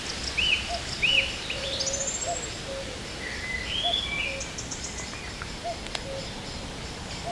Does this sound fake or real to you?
real